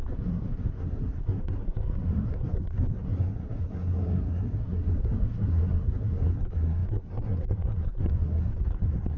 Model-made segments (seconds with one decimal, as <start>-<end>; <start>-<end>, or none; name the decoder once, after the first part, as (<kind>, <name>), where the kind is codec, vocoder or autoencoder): 0.0-9.2 (codec, SNAC)